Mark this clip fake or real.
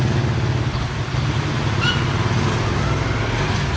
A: real